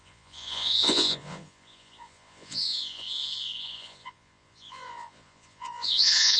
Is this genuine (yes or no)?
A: no